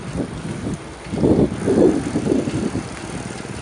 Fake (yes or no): no